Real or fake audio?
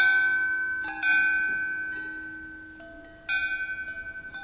real